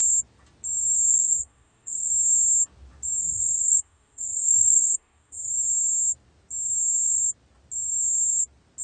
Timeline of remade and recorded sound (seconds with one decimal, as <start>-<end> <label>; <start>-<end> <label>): 0.0-1.1 recorded; 1.1-2.1 remade; 2.1-3.2 recorded; 3.2-5.5 remade; 5.5-8.8 recorded